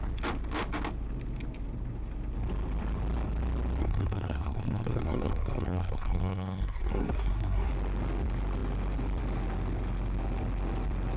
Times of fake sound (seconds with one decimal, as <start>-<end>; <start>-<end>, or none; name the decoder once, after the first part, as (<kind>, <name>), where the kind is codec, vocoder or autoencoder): 3.8-7.7 (codec, SNAC)